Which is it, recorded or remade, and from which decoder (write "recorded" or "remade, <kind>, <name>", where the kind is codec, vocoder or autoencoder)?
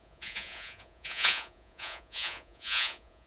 remade, vocoder, Vocos